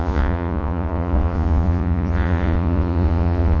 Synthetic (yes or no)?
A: yes